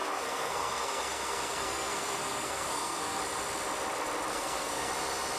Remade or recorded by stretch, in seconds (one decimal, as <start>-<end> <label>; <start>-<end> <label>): 0.0-3.2 remade; 3.2-4.3 recorded; 4.3-4.9 remade; 4.9-5.4 recorded